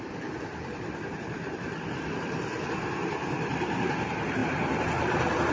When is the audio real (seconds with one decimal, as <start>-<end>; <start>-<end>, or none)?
none